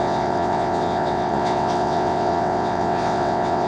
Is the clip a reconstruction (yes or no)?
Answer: yes